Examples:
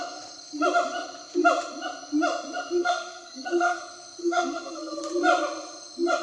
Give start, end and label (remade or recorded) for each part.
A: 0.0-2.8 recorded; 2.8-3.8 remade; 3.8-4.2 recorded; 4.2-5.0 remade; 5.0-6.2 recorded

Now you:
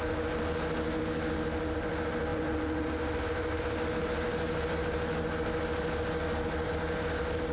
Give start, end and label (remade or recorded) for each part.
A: 0.0-7.5 recorded

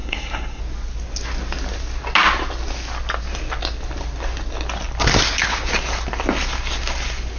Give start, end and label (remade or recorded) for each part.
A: 0.0-0.6 remade; 0.6-7.4 recorded

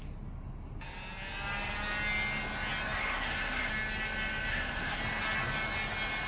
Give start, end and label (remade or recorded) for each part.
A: 0.0-3.0 recorded; 3.0-3.7 remade; 3.7-4.5 recorded; 4.5-5.0 remade; 5.0-6.3 recorded